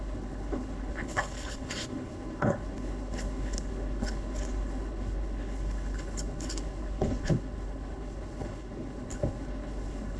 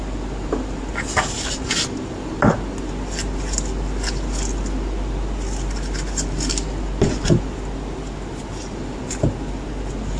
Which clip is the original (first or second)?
second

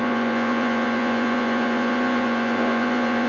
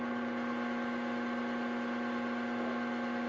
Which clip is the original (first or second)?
second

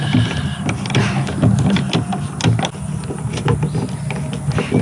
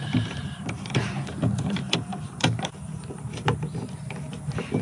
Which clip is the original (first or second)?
first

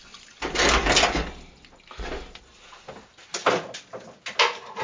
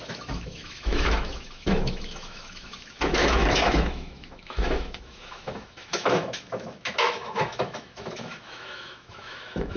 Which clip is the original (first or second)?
first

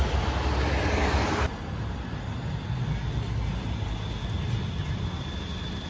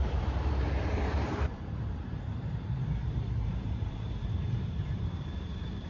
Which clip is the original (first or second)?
first